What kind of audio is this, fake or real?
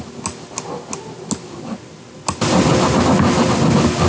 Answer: real